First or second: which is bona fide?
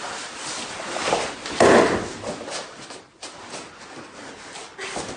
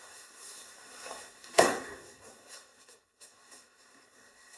first